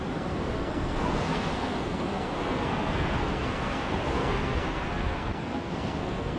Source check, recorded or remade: remade